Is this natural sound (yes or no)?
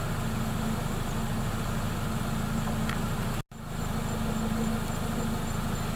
yes